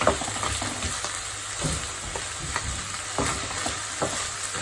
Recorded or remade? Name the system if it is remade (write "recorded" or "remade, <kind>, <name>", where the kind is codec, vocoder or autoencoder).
recorded